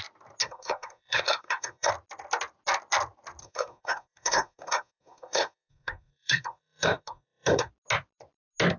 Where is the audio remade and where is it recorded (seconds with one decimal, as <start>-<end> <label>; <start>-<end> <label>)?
0.0-0.4 recorded; 0.4-1.9 remade; 1.9-3.4 recorded; 3.4-7.7 remade; 7.7-8.8 recorded